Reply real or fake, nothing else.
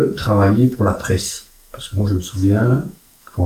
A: fake